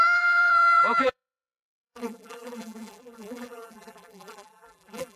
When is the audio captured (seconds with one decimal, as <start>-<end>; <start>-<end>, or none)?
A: none